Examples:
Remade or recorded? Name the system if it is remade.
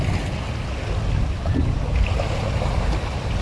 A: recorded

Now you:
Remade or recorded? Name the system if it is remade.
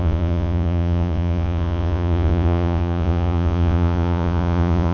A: remade, vocoder, Vocos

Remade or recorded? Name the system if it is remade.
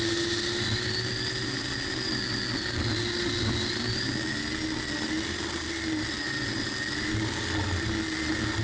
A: recorded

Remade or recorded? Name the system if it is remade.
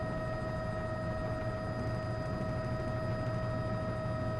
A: recorded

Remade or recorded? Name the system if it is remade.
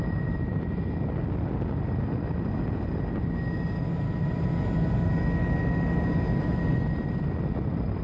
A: recorded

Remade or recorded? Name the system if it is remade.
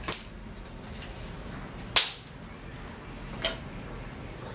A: recorded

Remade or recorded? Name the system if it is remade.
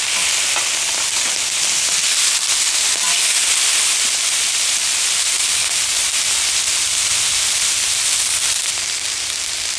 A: recorded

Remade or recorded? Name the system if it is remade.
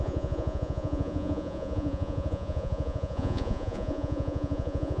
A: remade, vocoder, Vocos